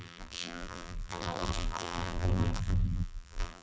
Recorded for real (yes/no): no